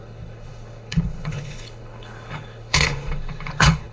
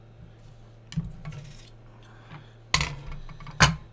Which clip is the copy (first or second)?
first